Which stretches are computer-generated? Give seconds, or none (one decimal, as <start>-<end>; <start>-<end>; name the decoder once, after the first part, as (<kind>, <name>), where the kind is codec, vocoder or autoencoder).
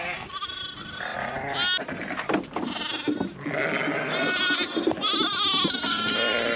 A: none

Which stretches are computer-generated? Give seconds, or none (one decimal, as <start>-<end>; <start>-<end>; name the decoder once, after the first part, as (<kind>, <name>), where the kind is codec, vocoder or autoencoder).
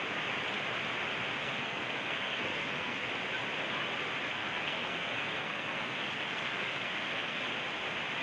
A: 1.4-3.1 (codec, SNAC); 4.3-7.4